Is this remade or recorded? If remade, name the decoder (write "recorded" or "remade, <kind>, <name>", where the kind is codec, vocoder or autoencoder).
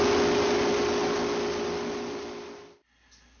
recorded